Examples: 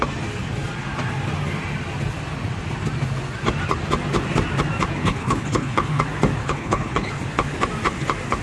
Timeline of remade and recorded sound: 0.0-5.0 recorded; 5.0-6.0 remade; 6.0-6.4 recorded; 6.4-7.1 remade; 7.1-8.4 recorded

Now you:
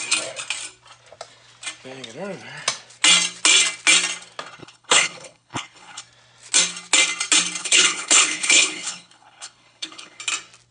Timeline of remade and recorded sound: 0.0-4.6 recorded; 4.6-6.0 remade; 6.0-7.6 recorded; 7.6-10.2 remade; 10.2-10.7 recorded

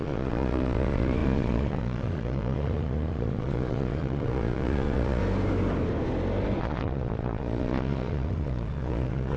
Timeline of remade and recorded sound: 0.0-5.2 remade; 5.2-6.6 recorded; 6.6-9.4 remade